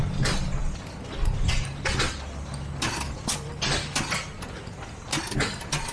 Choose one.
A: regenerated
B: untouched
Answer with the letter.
B